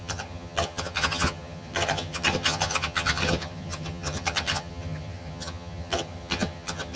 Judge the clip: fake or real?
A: fake